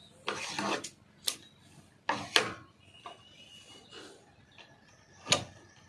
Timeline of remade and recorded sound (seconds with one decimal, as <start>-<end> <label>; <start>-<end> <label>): 0.0-5.9 recorded